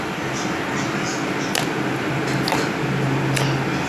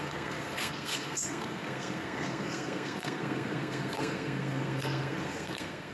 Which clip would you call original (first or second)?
first